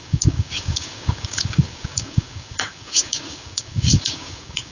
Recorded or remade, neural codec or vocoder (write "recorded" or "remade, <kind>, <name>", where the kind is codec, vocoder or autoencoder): remade, codec, DAC